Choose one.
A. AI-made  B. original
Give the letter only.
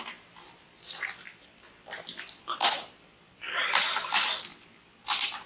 A